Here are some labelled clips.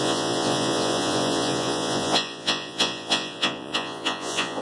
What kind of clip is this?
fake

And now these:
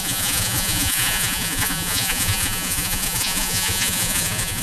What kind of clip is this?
fake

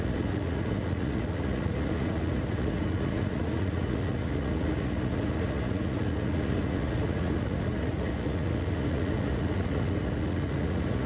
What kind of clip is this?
fake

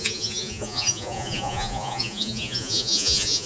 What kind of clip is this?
fake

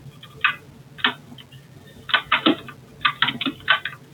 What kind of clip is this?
real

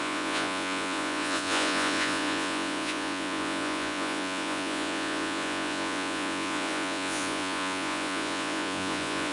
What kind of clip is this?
fake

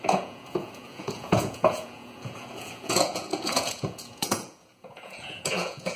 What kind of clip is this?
fake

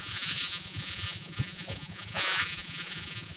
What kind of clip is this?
fake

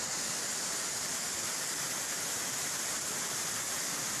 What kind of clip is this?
real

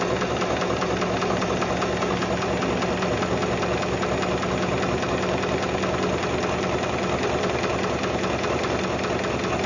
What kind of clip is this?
real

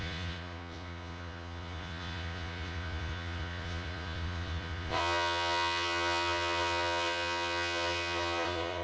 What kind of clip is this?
fake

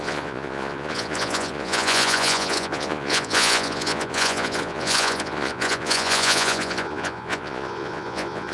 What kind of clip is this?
fake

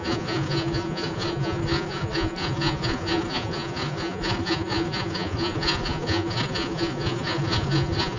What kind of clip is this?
fake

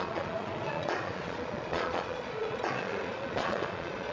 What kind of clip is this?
fake